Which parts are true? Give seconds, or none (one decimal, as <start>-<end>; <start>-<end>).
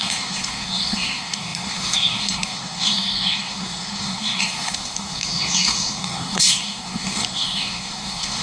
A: none